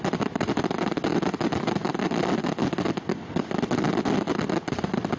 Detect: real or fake real